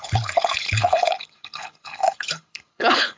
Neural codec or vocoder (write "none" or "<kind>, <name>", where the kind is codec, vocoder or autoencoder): codec, HILCodec